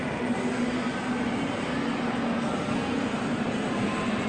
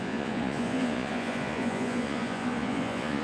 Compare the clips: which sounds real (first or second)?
first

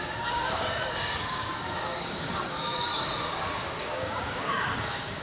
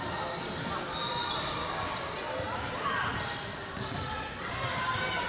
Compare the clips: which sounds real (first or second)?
second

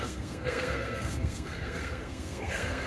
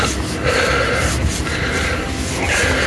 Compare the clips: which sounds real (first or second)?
second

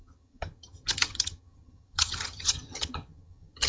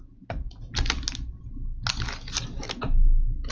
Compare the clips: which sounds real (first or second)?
second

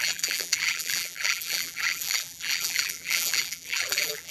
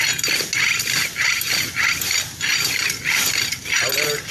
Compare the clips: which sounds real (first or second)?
second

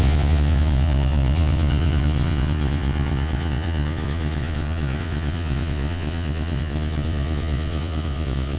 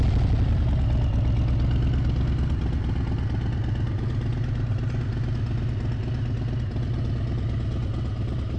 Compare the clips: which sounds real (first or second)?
second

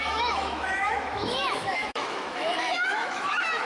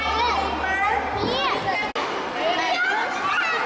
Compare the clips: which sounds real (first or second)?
second